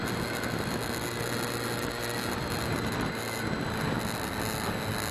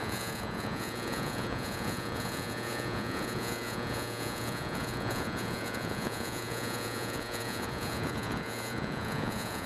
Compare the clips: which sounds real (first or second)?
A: first